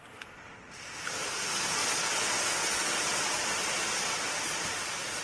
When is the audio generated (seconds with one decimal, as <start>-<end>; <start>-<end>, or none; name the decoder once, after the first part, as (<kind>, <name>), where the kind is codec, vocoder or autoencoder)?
1.8-5.2 (vocoder, Vocos)

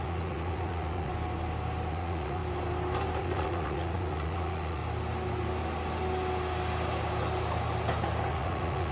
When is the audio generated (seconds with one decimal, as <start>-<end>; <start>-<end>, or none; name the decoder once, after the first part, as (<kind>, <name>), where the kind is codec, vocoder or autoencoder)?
0.0-1.1 (vocoder, Vocos); 1.9-2.4; 3.2-4.8; 8.3-8.9

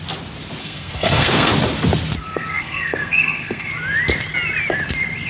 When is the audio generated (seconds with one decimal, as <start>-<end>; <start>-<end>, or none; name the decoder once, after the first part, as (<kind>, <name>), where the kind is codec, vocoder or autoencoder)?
0.6-1.5 (codec, SNAC); 2.2-3.7

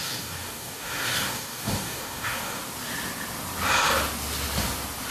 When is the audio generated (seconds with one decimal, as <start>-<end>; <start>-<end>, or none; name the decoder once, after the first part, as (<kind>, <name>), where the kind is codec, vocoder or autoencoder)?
0.0-2.6 (codec, DAC)

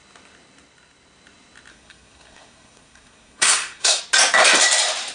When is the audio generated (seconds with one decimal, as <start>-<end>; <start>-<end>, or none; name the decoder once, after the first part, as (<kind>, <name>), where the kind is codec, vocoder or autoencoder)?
1.7-4.0 (codec, SNAC)

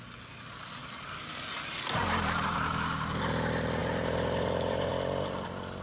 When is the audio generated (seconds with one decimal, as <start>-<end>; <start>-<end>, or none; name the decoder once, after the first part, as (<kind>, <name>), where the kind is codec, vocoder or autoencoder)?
0.8-1.3 (vocoder, BigVGAN v2); 2.0-3.2; 3.8-4.9